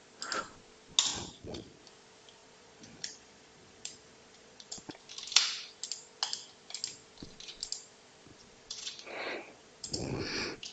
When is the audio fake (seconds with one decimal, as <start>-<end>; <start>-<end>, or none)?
1.1-1.8; 2.4-4.9; 8.3-10.2